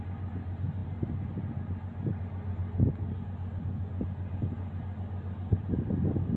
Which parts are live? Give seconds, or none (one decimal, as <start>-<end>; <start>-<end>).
0.0-6.4